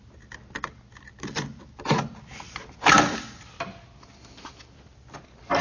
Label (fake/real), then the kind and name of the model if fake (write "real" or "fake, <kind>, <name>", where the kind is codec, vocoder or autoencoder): real